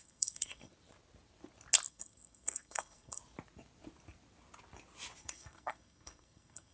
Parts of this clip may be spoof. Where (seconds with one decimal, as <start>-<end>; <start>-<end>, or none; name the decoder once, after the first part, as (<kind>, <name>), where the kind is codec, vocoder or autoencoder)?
0.0-0.7 (codec, SNAC); 1.9-3.2; 5.2-6.7